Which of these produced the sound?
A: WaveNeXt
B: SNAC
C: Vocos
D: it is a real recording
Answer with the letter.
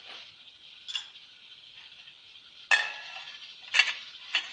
D